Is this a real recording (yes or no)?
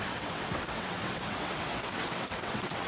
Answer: no